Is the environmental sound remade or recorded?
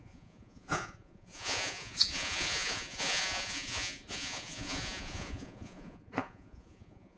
remade